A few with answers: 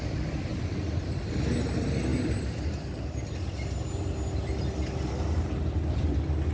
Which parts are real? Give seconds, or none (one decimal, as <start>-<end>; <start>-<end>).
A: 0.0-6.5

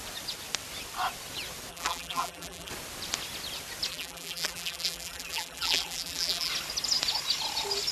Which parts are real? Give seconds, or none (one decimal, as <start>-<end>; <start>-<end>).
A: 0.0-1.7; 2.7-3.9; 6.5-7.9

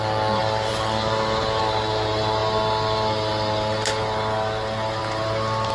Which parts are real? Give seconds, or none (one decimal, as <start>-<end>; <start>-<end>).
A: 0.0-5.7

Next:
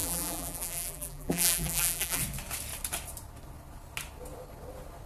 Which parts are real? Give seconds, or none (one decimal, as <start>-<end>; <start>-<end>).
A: 2.2-5.1